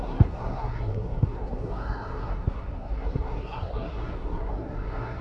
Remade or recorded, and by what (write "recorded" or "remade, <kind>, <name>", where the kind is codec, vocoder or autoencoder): remade, codec, SNAC